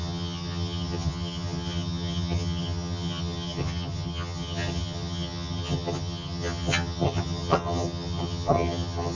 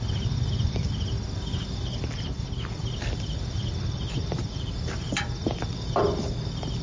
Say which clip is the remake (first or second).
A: first